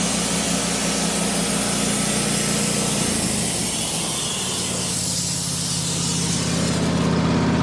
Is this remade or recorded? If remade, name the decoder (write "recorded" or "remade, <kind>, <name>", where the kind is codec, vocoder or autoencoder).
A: recorded